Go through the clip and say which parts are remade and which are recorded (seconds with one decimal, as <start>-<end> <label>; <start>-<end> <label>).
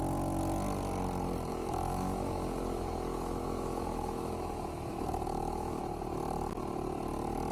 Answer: 0.0-1.5 recorded; 1.5-5.8 remade; 5.8-7.5 recorded